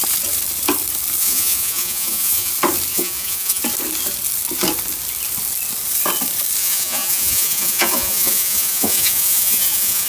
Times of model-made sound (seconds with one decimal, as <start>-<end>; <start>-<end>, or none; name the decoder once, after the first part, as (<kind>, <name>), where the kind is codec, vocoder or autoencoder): 1.2-2.5 (vocoder, Vocos); 2.9-3.6; 6.6-10.1